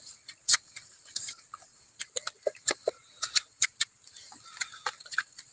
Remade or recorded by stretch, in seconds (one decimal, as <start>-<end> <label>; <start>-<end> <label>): 0.0-1.7 remade; 1.7-5.0 recorded; 5.0-5.5 remade